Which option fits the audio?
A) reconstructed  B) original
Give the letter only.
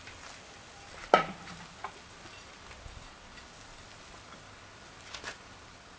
B